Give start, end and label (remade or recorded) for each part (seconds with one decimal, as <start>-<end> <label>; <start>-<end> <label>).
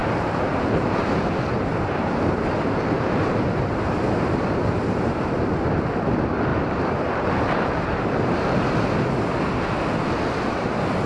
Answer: 0.0-5.3 remade; 5.3-6.5 recorded; 6.5-8.9 remade; 8.9-11.1 recorded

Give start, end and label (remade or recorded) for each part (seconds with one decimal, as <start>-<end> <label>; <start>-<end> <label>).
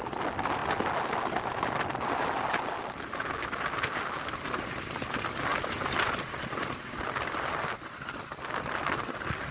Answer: 0.0-9.5 recorded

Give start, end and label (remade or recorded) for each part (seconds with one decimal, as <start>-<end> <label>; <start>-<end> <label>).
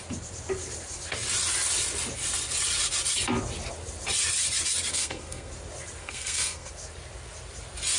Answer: 0.0-4.9 recorded; 4.9-5.5 remade; 5.5-6.0 recorded; 6.0-6.7 remade; 6.7-8.0 recorded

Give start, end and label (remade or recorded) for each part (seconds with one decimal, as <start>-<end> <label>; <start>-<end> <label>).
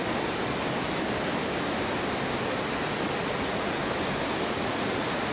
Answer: 0.0-3.2 recorded; 3.2-3.8 remade; 3.8-4.4 recorded; 4.4-5.3 remade